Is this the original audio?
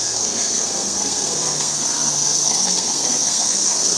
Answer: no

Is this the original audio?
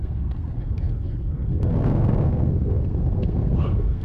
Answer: no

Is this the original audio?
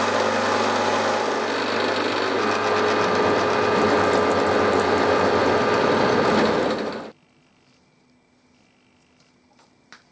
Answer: yes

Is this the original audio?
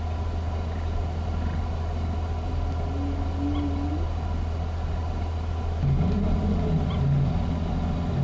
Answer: yes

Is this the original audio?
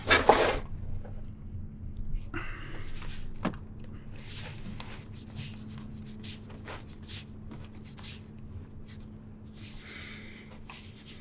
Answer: yes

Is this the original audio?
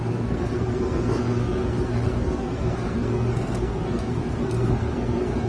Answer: no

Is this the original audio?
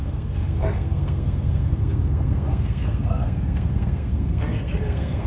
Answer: no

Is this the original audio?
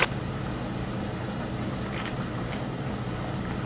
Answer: yes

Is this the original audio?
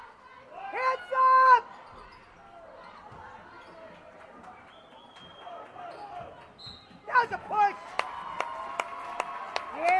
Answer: yes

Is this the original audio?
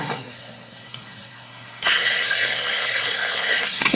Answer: no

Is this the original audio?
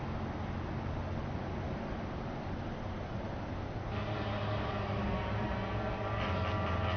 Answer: yes